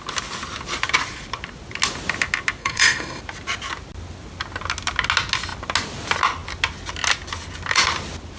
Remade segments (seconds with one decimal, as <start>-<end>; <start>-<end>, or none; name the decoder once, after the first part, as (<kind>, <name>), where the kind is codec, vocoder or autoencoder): 2.6-3.2 (codec, SNAC)